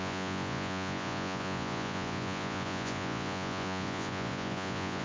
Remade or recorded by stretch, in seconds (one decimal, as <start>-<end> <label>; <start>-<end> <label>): 0.0-5.0 remade